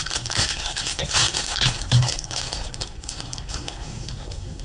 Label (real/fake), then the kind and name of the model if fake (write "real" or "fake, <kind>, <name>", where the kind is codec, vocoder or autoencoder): fake, codec, SNAC